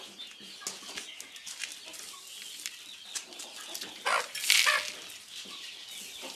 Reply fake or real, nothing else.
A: real